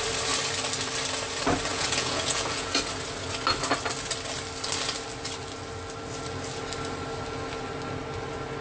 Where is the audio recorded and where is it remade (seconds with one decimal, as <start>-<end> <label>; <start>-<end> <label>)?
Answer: 0.0-1.7 recorded; 1.7-2.8 remade; 2.8-8.6 recorded